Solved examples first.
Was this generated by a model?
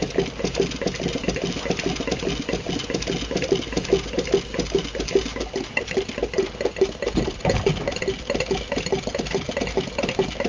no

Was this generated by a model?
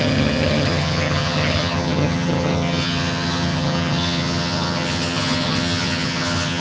yes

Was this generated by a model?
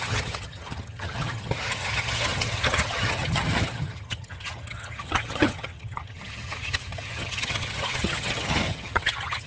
yes